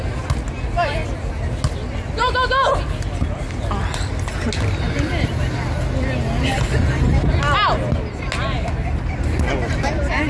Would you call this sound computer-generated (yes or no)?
no